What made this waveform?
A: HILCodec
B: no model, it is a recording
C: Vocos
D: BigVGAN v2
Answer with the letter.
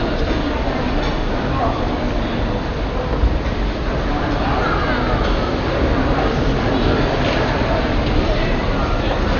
D